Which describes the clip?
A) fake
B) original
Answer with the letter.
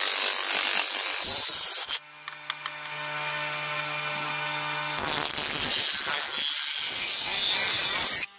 B